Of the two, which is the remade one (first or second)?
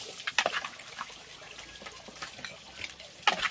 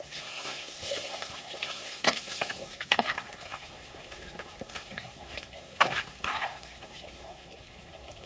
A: second